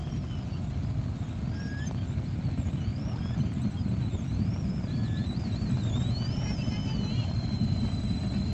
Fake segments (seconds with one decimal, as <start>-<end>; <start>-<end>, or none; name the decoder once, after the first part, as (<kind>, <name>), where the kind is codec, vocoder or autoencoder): 0.0-0.5 (vocoder, BigVGAN v2); 2.9-5.9